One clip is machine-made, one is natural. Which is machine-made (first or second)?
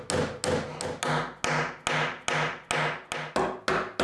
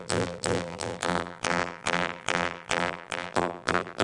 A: second